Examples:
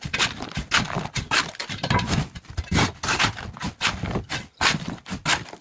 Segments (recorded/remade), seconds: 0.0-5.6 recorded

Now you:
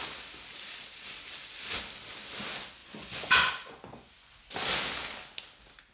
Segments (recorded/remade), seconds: 0.0-2.8 recorded; 2.8-4.3 remade; 4.3-5.9 recorded

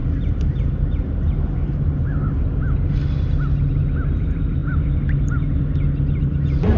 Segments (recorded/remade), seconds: 0.0-6.8 recorded

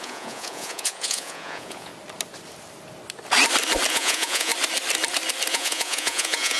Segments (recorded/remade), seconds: 0.0-1.9 remade; 1.9-3.9 recorded; 3.9-4.5 remade; 4.5-5.5 recorded; 5.5-6.6 remade

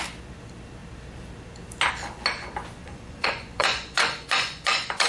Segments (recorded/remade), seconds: 0.0-2.8 recorded; 2.8-5.1 remade

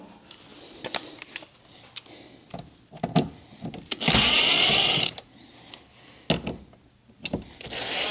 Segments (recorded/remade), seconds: 0.0-8.1 recorded

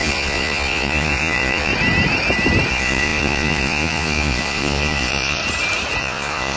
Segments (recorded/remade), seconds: 0.0-1.7 remade; 1.7-2.7 recorded; 2.7-5.4 remade; 5.4-6.0 recorded; 6.0-6.6 remade